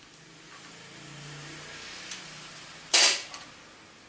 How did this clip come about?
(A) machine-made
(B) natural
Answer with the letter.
B